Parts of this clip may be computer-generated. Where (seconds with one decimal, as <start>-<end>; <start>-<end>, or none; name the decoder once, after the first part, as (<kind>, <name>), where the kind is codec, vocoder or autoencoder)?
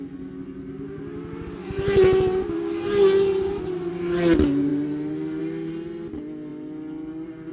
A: none